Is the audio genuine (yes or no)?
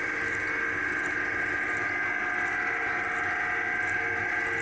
yes